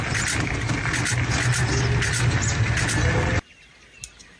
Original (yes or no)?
yes